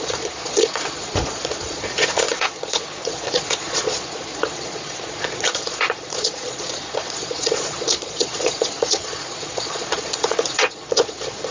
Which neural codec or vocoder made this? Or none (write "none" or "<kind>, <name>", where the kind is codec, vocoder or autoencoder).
vocoder, Vocos